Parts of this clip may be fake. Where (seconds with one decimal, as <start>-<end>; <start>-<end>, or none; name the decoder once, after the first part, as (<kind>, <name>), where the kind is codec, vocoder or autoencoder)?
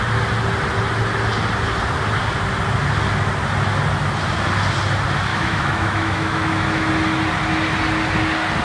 5.3-6.9 (autoencoder, DAC-VAE)